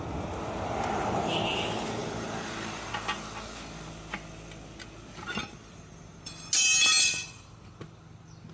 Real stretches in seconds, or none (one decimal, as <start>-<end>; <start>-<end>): 0.0-2.0; 2.9-5.4; 6.5-8.5